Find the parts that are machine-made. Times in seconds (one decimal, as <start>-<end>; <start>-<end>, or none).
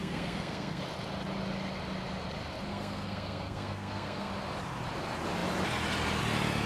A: 0.0-0.8; 2.7-4.3